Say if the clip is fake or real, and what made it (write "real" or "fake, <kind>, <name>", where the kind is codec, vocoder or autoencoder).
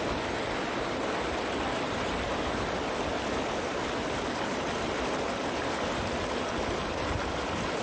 real